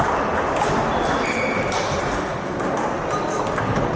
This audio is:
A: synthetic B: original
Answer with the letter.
B